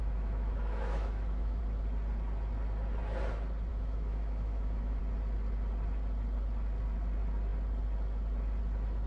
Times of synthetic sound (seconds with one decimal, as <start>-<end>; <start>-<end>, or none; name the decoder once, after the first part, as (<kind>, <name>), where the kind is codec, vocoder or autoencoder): 0.0-1.6 (autoencoder, DAC-VAE); 3.7-5.0